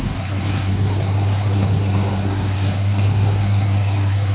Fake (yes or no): yes